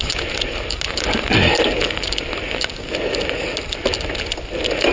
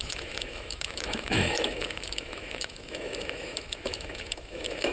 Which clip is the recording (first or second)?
first